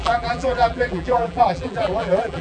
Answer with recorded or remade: remade